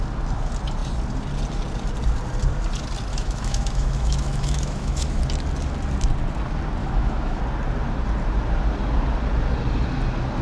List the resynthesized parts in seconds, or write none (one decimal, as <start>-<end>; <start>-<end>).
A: 3.1-5.2; 6.8-7.4